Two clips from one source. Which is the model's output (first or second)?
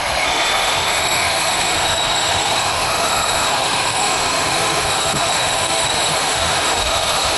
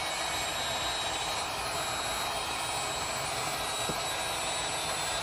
first